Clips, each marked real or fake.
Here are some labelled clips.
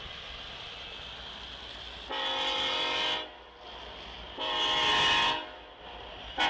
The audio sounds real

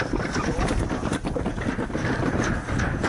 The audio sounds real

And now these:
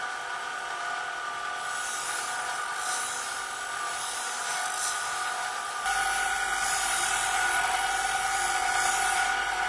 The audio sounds real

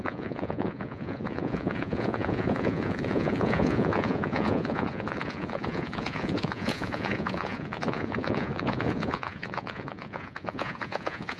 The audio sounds fake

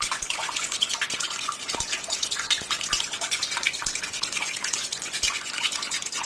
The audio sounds fake